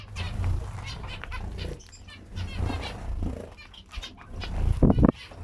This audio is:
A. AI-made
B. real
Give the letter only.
B